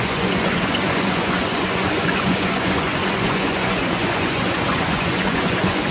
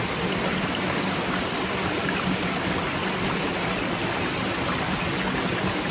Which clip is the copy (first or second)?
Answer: first